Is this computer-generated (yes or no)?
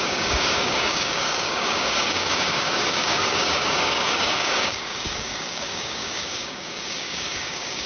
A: yes